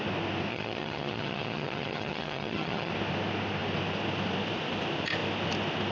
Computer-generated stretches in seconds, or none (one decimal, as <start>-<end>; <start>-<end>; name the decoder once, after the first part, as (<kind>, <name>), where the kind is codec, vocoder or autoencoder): 0.5-2.9 (vocoder, HiFi-GAN)